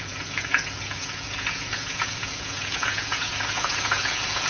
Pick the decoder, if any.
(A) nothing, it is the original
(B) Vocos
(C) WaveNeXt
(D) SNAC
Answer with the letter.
B